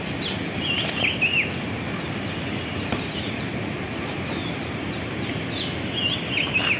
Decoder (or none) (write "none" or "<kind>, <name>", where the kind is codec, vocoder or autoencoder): none